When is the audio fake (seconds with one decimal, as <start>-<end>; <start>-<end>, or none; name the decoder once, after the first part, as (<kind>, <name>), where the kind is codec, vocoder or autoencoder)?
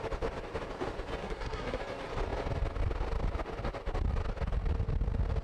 1.2-1.8 (codec, SNAC)